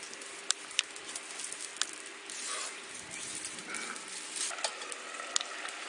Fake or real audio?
real